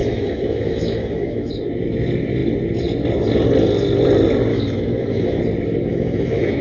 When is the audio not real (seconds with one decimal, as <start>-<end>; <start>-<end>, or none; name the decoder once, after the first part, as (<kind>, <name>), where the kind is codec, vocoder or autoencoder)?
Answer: 0.0-1.5 (autoencoder, DAC-VAE); 4.5-5.4; 5.9-6.6